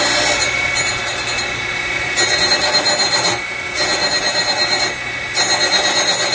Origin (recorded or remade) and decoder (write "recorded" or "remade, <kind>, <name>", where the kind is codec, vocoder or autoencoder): recorded